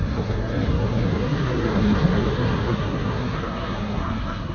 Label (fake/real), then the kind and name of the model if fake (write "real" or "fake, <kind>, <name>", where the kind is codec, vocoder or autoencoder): fake, codec, SNAC